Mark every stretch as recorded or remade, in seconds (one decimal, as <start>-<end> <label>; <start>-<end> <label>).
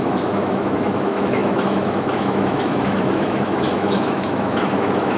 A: 0.0-5.2 remade